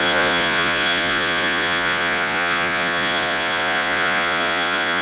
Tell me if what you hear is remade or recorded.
remade